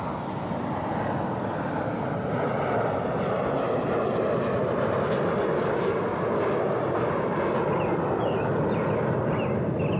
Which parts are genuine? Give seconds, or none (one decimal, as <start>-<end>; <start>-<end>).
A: 0.0-10.0